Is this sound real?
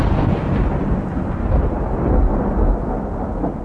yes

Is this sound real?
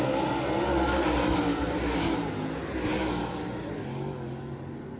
yes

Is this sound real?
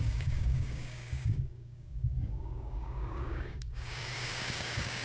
no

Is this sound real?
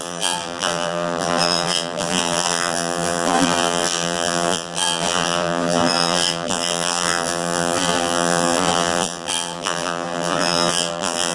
no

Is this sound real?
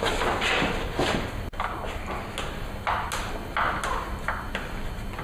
yes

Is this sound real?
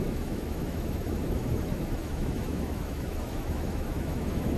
no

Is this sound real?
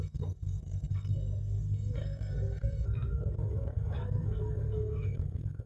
no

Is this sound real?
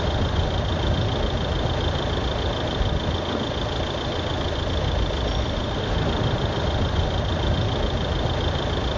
yes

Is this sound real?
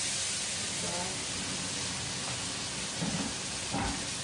yes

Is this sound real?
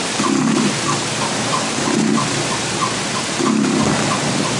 yes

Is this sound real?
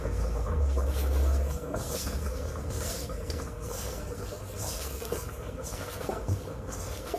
no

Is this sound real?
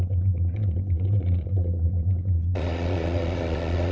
no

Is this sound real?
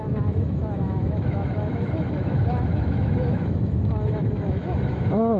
no